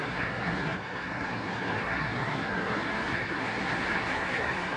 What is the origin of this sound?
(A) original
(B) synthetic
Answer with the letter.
B